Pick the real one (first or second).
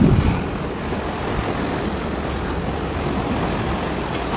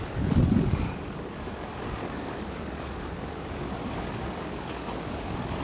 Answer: first